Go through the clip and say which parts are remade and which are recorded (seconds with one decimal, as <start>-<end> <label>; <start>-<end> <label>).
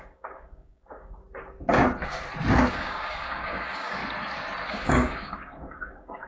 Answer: 0.0-1.2 remade; 1.2-2.7 recorded; 2.7-4.0 remade; 4.0-4.7 recorded; 4.7-6.3 remade